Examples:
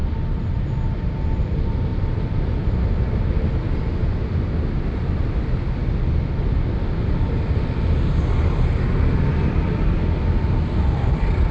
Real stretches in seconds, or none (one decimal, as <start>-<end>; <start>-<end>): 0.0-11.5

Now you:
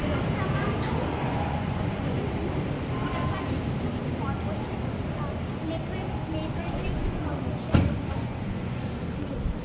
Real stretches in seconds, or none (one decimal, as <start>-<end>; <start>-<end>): 0.0-1.1; 2.2-6.6; 8.8-9.6

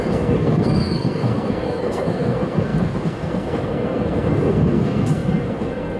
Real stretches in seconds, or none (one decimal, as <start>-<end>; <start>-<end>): none

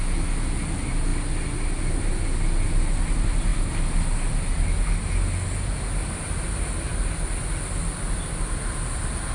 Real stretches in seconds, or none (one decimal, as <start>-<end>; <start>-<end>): 0.0-9.3

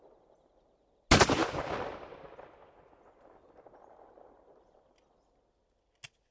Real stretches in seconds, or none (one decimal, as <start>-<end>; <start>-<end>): 0.0-6.3